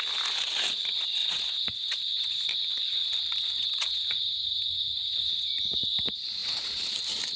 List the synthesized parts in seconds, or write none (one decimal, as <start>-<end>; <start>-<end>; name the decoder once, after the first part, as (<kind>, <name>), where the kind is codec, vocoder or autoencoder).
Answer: 1.2-2.3 (vocoder, Vocos); 3.4-5.2; 6.4-6.9